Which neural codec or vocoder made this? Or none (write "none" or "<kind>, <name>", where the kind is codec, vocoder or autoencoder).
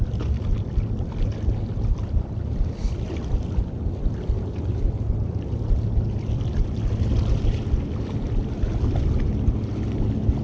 none